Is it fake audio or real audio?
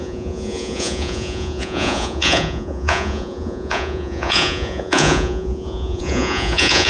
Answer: fake